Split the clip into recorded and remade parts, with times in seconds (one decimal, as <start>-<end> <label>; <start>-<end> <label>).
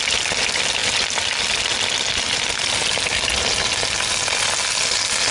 0.0-5.3 recorded